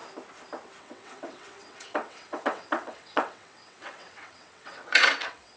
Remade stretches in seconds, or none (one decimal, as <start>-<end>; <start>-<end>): 0.8-5.6